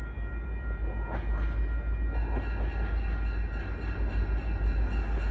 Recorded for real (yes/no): yes